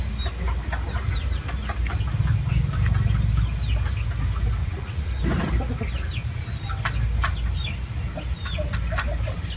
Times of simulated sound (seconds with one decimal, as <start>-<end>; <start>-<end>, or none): 4.6-5.2